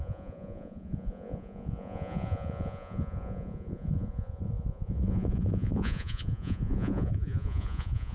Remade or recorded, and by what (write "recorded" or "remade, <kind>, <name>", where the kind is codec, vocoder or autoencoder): remade, vocoder, Vocos